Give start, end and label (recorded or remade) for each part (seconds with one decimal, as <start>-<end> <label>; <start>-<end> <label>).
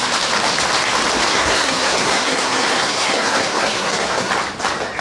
0.0-1.3 recorded; 1.3-4.3 remade; 4.3-5.0 recorded